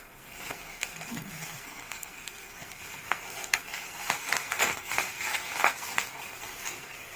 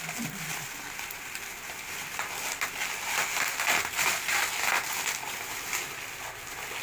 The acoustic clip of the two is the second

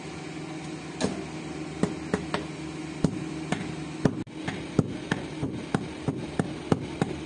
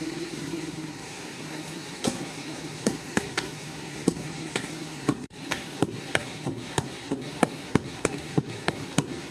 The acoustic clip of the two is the first